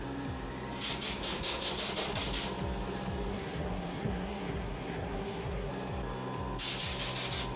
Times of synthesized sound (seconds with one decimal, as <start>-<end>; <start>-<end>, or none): 1.2-1.7; 3.3-5.7